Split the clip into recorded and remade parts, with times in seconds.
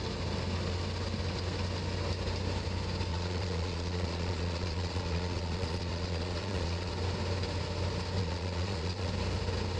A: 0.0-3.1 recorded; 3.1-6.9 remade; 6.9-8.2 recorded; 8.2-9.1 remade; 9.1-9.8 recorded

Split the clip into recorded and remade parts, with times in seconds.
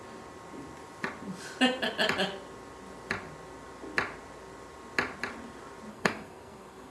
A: 0.0-5.9 recorded; 5.9-6.9 remade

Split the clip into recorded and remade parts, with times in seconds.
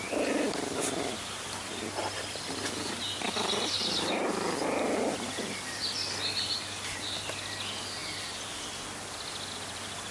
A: 0.0-10.1 recorded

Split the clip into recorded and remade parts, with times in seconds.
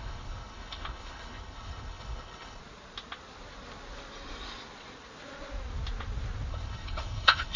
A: 0.0-2.6 remade; 2.6-6.5 recorded; 6.5-7.6 remade